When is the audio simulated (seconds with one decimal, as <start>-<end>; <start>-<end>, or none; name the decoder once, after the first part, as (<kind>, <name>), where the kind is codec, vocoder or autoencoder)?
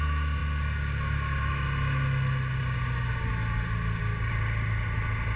none